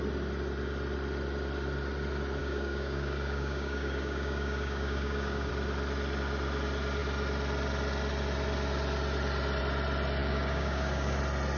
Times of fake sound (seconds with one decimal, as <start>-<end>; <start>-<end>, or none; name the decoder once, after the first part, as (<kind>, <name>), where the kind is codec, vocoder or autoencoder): 2.4-5.5 (codec, DAC); 10.2-11.2